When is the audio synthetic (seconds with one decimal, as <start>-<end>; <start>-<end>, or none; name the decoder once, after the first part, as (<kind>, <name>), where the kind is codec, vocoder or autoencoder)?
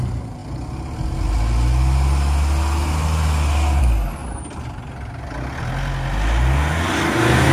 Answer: none